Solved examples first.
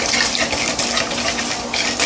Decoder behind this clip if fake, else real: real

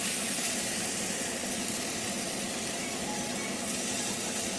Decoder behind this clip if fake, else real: real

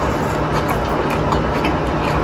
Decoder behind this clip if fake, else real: real